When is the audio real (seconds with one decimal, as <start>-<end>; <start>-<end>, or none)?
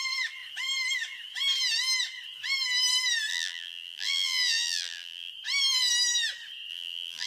0.0-3.3; 5.3-6.7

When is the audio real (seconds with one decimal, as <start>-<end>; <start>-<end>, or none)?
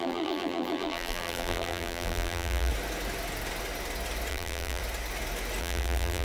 2.7-4.3; 4.8-5.6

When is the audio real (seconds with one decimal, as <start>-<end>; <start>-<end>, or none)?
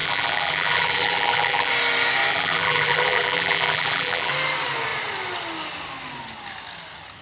1.7-2.3; 4.3-7.2